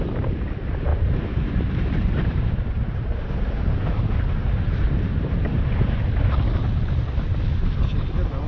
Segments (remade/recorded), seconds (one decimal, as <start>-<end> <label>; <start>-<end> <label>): 0.0-0.9 recorded; 0.9-5.6 remade; 5.6-8.5 recorded